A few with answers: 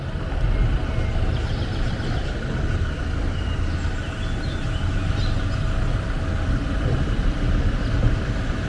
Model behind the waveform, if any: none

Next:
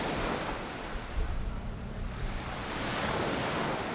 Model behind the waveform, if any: vocoder, BigVGAN v2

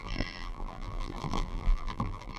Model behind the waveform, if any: vocoder, BigVGAN v2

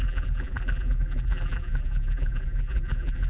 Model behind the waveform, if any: vocoder, BigVGAN v2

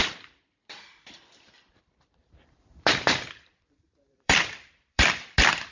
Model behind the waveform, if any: vocoder, BigVGAN v2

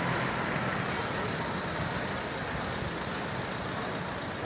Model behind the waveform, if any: none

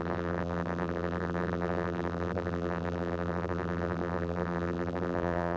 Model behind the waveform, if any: vocoder, BigVGAN v2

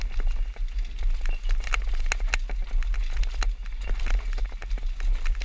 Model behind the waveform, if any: none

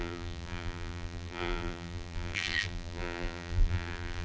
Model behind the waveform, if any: vocoder, BigVGAN v2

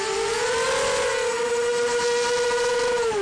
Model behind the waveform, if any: none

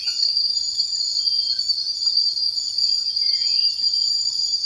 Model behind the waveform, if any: vocoder, BigVGAN v2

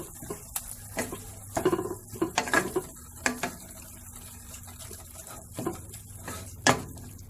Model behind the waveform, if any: vocoder, BigVGAN v2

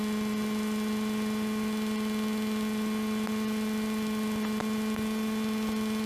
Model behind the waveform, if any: none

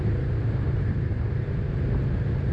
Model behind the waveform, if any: vocoder, BigVGAN v2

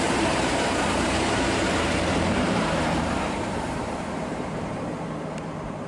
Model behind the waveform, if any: vocoder, BigVGAN v2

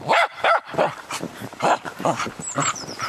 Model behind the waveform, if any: vocoder, BigVGAN v2